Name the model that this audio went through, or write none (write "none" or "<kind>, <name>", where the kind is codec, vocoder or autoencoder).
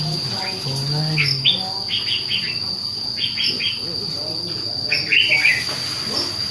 none